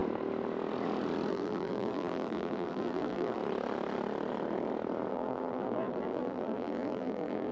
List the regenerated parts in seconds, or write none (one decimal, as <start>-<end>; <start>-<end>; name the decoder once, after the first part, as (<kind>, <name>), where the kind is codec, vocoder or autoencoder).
1.3-3.4 (vocoder, BigVGAN v2); 5.1-7.5